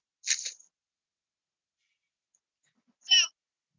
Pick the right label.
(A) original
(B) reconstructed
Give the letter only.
A